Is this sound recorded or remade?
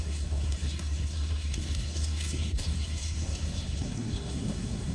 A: remade